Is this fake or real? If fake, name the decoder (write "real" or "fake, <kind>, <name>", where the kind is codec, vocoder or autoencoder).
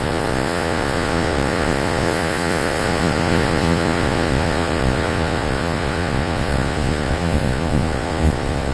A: fake, vocoder, Vocos